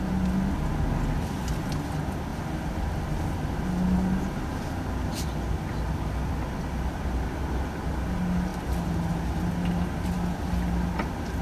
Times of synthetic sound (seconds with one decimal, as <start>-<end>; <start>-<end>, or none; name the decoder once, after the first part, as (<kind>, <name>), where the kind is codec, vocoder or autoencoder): none